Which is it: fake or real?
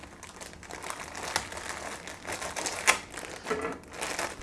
real